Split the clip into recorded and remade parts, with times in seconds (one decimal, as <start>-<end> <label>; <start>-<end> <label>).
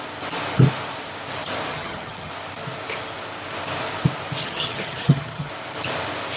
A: 0.0-1.7 recorded; 1.7-2.3 remade; 2.3-4.4 recorded; 4.4-5.5 remade; 5.5-6.4 recorded